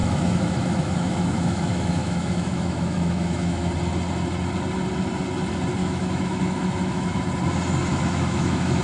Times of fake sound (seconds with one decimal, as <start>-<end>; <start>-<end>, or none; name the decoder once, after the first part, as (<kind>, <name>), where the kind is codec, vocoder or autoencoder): 0.0-3.7 (autoencoder, DAC-VAE); 5.8-7.2; 7.9-8.8